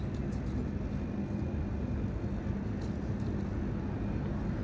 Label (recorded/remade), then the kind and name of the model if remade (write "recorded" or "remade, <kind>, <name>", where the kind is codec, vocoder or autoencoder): recorded